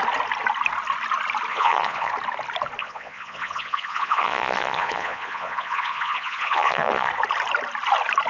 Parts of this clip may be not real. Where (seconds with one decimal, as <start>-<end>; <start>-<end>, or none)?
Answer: 1.5-2.1; 2.8-7.1